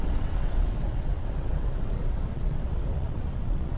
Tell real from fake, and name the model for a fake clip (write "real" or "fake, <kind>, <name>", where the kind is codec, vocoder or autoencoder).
fake, vocoder, WaveNeXt